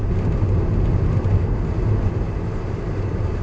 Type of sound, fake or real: real